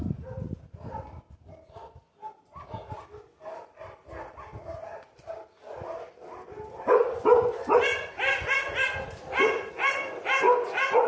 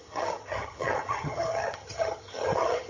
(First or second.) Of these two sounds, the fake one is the second